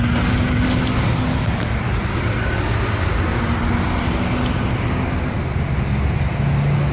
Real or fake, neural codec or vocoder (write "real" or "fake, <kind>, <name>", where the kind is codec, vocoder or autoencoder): real